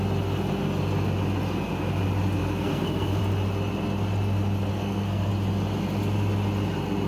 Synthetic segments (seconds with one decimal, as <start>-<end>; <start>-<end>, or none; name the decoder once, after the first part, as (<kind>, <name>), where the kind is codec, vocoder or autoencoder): 2.4-3.2 (codec, SNAC); 4.7-5.3